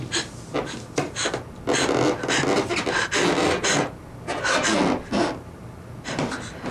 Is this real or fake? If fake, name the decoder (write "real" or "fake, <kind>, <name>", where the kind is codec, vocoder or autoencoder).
real